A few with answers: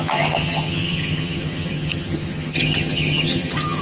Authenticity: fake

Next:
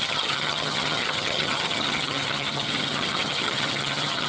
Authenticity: fake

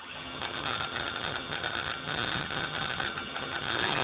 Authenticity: fake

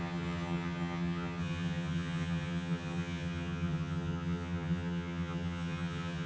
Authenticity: fake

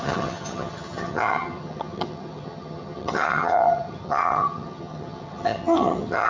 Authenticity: fake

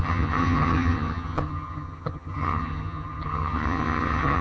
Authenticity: fake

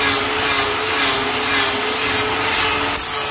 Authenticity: real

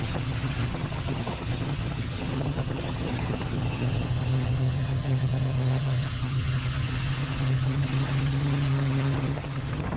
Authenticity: fake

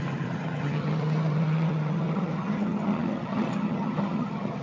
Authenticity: fake